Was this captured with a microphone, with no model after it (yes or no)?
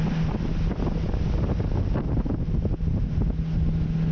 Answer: yes